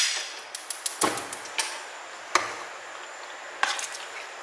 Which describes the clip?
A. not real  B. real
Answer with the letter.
B